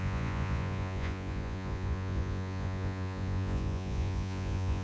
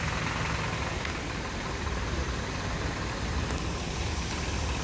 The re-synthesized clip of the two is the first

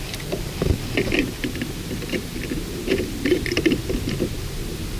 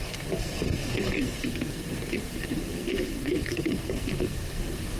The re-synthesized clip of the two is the second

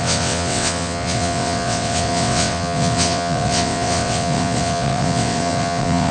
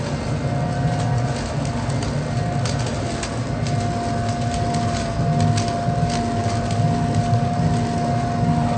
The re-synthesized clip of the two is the first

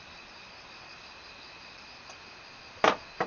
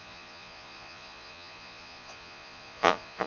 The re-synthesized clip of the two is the second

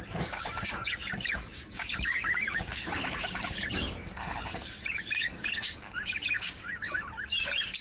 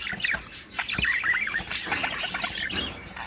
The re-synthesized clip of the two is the first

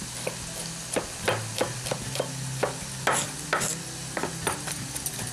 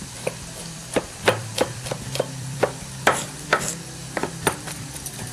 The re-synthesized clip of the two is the second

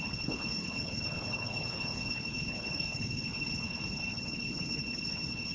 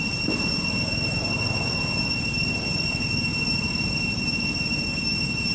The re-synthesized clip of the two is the first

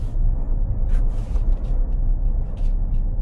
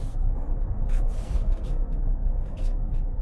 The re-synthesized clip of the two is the second